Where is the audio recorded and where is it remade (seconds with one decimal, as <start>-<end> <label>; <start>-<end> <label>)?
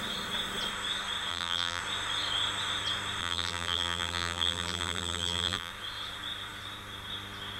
0.0-1.3 recorded; 1.3-1.8 remade; 1.8-3.2 recorded; 3.2-5.7 remade; 5.7-7.6 recorded